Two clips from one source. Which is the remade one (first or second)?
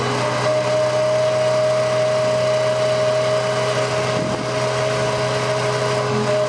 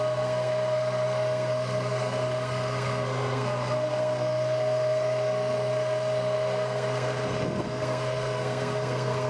second